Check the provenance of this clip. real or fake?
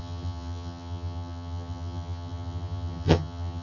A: fake